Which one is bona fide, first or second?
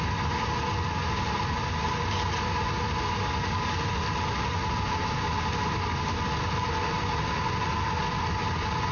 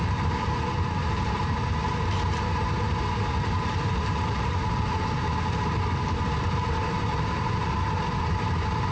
first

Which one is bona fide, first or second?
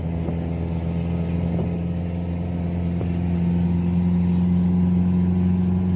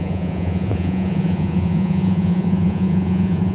first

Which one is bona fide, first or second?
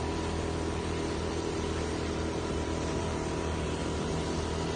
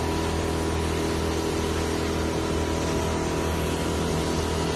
second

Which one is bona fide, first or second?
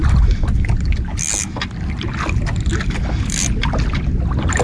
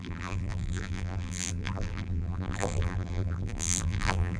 first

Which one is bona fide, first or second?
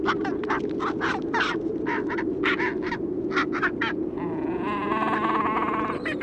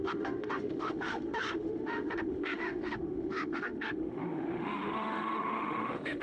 first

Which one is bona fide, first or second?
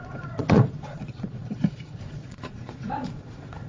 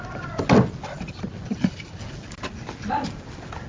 second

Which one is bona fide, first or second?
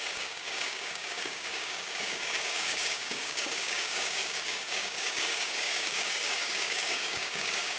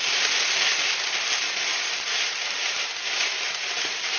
second